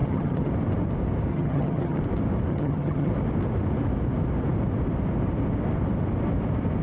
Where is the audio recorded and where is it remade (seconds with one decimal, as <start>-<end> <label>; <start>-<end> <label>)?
0.0-0.5 remade; 0.5-1.3 recorded; 1.3-2.0 remade; 2.0-2.5 recorded; 2.5-3.1 remade; 3.1-6.8 recorded